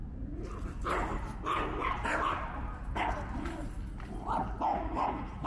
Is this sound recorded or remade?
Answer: recorded